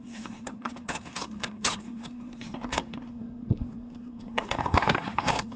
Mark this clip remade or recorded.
remade